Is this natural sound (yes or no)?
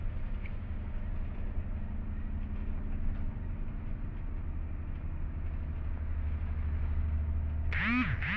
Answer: yes